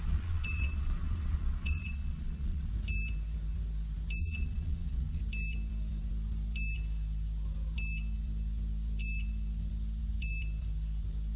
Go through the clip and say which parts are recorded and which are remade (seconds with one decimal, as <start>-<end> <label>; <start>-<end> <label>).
0.0-2.7 remade; 2.7-4.2 recorded; 4.2-5.2 remade; 5.2-11.4 recorded